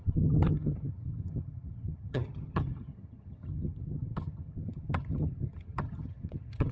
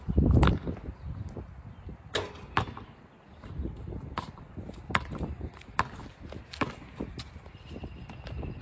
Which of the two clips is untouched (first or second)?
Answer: second